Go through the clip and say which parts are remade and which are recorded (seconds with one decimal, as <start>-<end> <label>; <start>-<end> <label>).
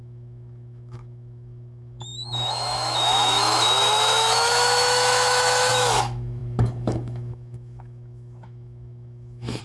0.0-9.6 remade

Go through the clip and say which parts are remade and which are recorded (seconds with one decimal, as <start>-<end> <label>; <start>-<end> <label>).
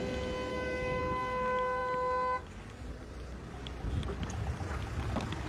0.0-0.5 recorded; 0.5-1.0 remade; 1.0-5.5 recorded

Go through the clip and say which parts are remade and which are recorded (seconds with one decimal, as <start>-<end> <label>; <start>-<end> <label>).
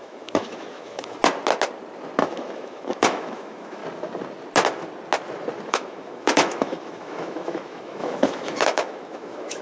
0.0-1.2 remade; 1.2-2.3 recorded; 2.3-3.8 remade; 3.8-5.7 recorded; 5.7-9.6 remade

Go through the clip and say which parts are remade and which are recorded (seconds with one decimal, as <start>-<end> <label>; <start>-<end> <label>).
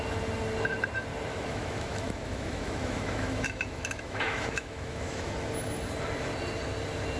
0.0-1.3 recorded; 1.3-5.3 remade; 5.3-7.2 recorded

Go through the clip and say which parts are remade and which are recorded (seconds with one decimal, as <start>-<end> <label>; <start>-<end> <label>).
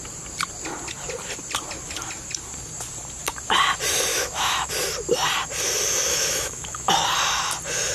0.0-4.1 recorded; 4.1-4.7 remade; 4.7-6.1 recorded; 6.1-6.9 remade; 6.9-7.9 recorded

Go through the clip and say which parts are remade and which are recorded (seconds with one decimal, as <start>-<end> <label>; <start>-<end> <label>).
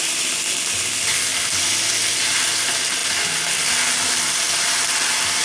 0.0-5.4 recorded